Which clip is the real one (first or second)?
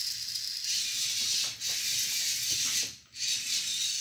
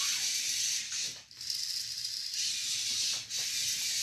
first